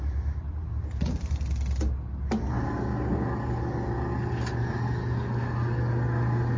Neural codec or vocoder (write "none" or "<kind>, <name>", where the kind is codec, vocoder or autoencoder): none